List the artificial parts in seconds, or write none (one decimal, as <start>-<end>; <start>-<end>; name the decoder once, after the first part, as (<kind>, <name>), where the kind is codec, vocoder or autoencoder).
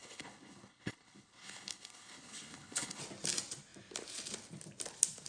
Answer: 0.0-3.0 (codec, HILCodec)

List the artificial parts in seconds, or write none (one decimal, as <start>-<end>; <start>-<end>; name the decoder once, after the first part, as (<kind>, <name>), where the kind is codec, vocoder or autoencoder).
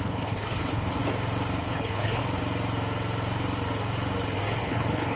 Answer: 0.0-1.0 (codec, HILCodec); 1.6-2.2; 4.6-5.2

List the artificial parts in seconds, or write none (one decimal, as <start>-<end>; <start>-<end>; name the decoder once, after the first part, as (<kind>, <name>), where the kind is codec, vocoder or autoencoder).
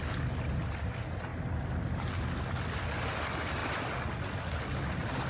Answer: none